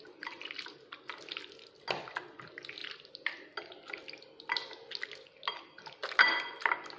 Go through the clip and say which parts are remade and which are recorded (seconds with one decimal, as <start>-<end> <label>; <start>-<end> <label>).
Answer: 0.0-7.0 recorded

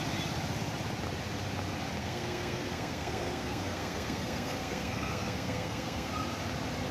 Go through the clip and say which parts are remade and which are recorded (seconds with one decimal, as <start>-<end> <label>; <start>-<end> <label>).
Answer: 0.0-2.0 recorded; 2.0-6.1 remade; 6.1-6.9 recorded